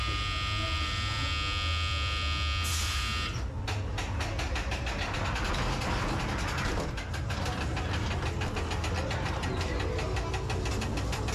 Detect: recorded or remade recorded